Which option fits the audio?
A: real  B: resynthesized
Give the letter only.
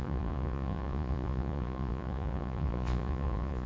B